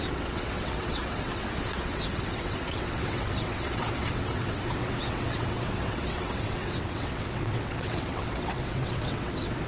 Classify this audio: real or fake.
fake